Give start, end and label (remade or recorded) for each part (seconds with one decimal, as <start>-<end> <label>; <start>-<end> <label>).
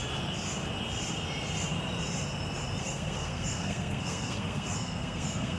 0.0-2.8 recorded; 2.8-5.6 remade